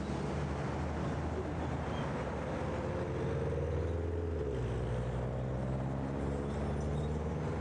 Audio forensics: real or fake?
real